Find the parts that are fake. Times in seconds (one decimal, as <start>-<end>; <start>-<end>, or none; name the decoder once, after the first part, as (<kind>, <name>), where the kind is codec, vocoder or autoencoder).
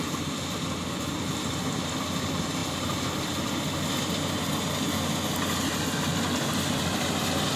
none